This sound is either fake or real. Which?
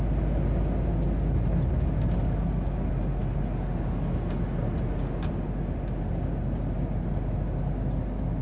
real